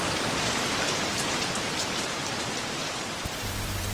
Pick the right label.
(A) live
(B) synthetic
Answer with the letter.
B